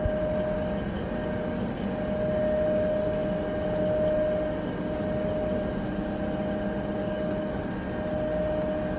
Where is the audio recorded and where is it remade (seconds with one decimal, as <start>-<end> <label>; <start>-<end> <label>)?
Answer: 0.0-7.0 recorded; 7.0-7.6 remade; 7.6-9.0 recorded